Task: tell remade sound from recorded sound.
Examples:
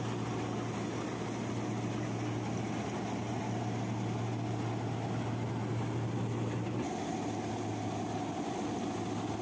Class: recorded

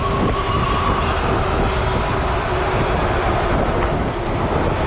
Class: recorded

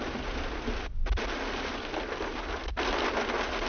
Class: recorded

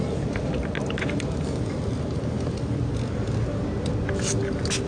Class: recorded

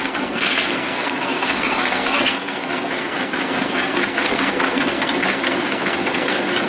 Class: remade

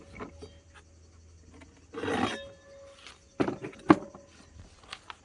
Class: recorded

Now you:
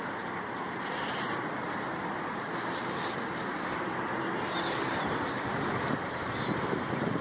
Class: recorded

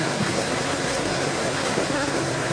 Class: remade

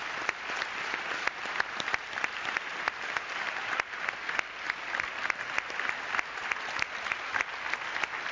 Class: recorded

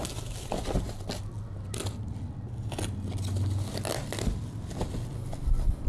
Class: recorded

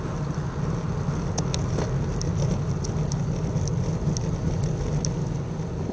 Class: recorded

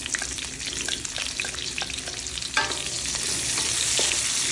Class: recorded